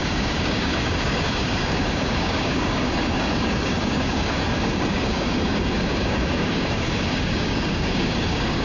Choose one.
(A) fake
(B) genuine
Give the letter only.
A